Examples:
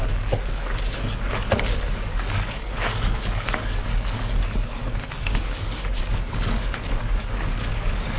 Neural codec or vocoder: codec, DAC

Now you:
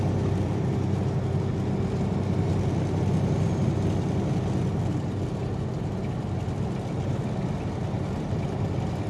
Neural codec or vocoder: none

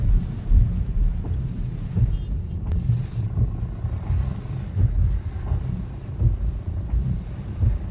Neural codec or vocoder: none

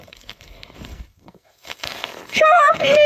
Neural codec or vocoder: codec, SNAC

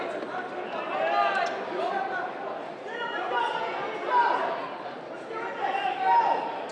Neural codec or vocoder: none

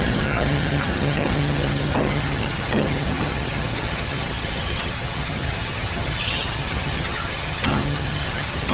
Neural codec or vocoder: vocoder, HiFi-GAN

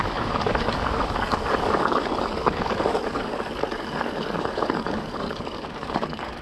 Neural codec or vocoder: codec, DAC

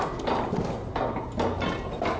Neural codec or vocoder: none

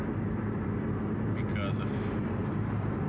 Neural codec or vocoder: none